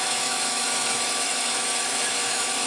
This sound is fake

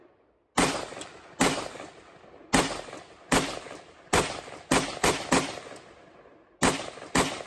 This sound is real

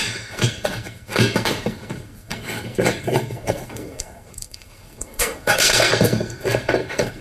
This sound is fake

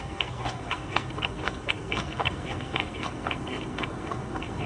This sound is fake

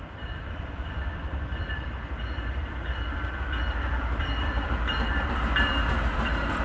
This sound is fake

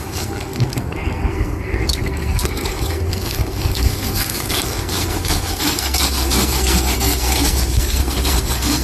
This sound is fake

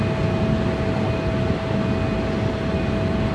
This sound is real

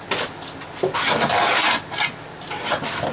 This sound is real